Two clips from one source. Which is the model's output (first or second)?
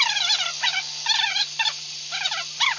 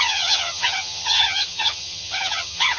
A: second